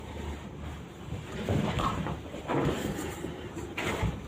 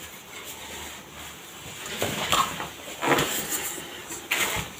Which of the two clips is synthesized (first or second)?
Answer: first